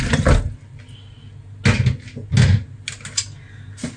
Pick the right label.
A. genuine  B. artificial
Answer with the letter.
A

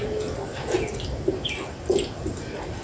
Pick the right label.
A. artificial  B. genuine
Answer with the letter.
B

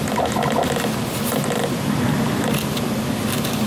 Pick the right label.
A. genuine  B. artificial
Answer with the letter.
A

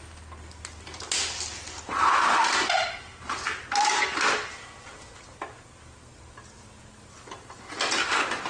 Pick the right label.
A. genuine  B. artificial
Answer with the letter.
A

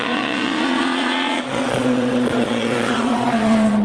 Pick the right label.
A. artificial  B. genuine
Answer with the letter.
A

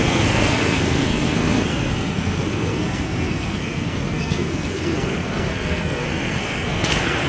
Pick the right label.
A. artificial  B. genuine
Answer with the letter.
A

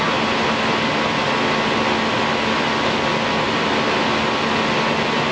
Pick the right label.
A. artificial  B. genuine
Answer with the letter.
B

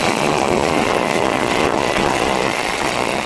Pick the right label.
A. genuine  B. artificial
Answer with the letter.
B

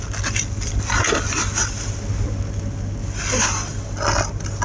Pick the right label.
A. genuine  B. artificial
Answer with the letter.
A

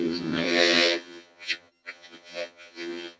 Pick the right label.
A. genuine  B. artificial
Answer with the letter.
B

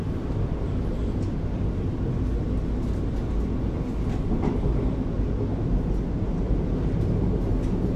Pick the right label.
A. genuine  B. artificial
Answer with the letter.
A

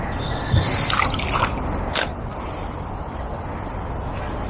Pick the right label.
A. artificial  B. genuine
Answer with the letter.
B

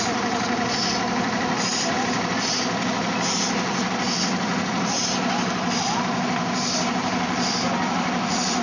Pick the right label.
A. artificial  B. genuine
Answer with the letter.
B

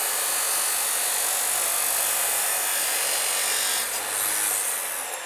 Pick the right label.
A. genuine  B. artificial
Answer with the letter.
A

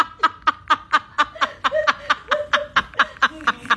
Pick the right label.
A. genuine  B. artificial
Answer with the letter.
A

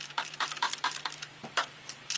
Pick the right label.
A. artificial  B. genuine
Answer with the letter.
A